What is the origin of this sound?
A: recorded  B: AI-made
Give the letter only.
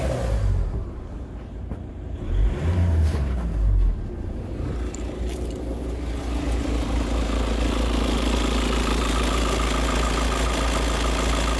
A